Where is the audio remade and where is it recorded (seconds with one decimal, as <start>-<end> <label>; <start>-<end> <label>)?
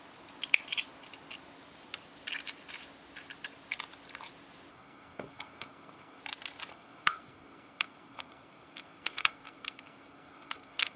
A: 0.0-4.7 recorded; 4.7-6.2 remade; 6.2-6.7 recorded; 6.7-11.0 remade